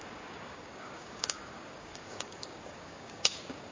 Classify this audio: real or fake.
fake